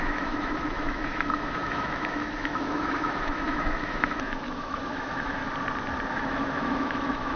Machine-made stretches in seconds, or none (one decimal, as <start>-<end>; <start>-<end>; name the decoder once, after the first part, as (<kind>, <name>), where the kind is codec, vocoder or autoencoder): 0.0-5.4 (autoencoder, DAC-VAE); 6.1-7.4